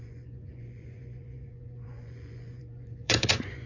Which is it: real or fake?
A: fake